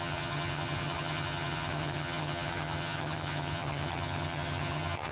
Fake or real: fake